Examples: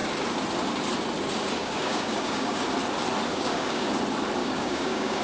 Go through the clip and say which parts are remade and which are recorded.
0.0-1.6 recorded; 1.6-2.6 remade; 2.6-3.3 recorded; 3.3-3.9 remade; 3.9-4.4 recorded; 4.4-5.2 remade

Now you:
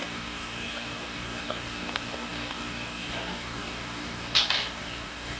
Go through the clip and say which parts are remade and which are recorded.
0.0-5.4 remade